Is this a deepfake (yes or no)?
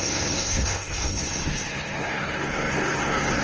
yes